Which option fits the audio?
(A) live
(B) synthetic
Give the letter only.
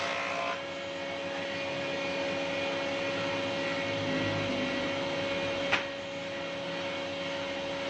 A